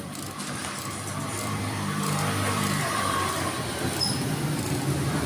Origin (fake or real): fake